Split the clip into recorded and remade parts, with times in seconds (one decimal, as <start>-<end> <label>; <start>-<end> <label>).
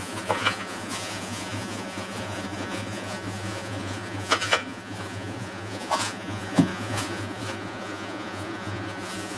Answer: 0.0-9.4 remade